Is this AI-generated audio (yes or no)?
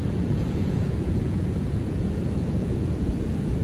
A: yes